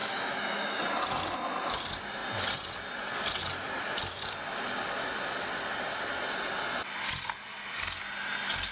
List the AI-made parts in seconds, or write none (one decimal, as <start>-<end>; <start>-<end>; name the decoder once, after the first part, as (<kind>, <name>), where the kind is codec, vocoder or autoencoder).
0.0-0.8 (autoencoder, DAC-VAE)